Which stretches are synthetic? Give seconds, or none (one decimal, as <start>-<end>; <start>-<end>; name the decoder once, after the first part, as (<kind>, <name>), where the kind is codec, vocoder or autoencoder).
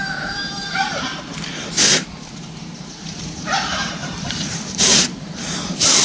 0.0-1.1 (vocoder, BigVGAN v2); 1.7-6.0